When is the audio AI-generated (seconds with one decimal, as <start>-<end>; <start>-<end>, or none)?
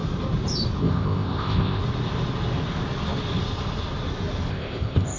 0.8-1.8; 4.5-5.2